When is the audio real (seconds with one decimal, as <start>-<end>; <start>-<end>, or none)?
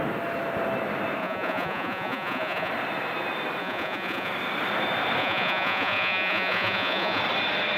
0.0-1.2; 2.7-3.6; 4.3-5.2; 7.2-7.8